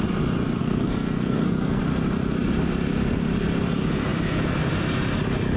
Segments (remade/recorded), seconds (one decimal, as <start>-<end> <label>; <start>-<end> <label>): 0.0-0.6 recorded; 0.6-1.8 remade; 1.8-5.6 recorded